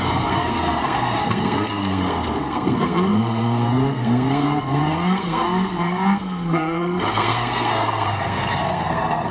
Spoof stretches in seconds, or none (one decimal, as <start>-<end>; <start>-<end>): 0.0-9.3